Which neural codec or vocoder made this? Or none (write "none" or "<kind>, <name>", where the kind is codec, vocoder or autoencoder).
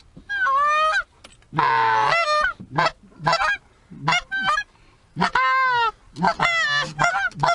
none